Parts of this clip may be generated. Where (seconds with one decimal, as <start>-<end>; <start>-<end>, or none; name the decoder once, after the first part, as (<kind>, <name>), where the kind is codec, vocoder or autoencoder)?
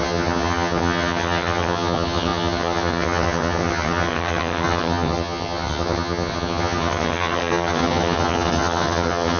0.0-9.4 (vocoder, HiFi-GAN)